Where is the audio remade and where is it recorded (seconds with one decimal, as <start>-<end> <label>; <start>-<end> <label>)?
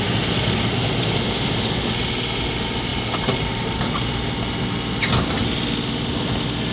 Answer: 0.0-6.7 recorded